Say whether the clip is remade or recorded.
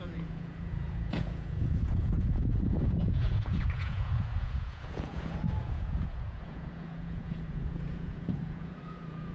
remade